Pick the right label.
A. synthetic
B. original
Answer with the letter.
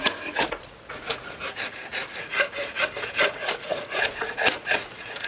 A